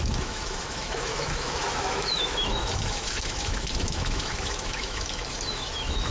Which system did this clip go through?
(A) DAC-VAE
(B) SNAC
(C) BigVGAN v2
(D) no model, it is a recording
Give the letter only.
A